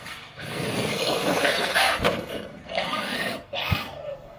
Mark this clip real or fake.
fake